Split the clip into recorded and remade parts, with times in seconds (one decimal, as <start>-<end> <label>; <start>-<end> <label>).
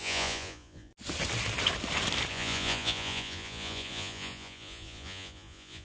0.0-0.9 remade; 0.9-2.3 recorded; 2.3-5.8 remade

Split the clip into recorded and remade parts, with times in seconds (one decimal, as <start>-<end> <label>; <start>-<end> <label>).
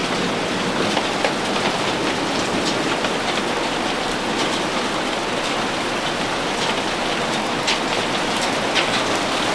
0.0-9.5 recorded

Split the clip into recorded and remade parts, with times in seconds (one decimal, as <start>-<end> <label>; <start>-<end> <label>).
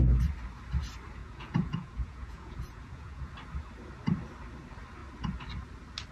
0.0-1.2 recorded; 1.2-3.3 remade; 3.3-6.1 recorded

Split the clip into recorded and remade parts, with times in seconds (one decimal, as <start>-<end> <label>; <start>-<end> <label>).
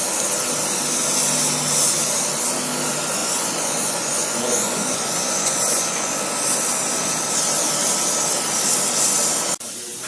0.0-3.2 recorded; 3.2-6.2 remade; 6.2-10.1 recorded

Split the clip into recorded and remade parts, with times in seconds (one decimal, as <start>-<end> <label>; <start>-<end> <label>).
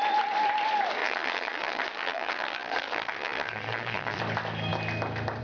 0.0-1.0 recorded; 1.0-4.2 remade; 4.2-5.4 recorded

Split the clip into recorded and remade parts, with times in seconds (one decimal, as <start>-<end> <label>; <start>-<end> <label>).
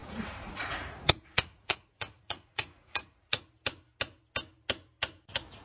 0.0-3.4 remade; 3.4-5.6 recorded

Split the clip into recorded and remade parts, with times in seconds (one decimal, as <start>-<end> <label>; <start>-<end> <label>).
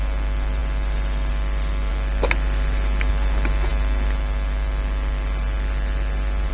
0.0-6.5 recorded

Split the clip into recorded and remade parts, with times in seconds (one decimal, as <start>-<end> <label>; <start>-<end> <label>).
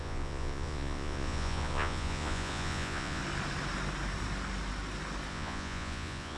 0.0-3.2 remade; 3.2-5.3 recorded; 5.3-6.4 remade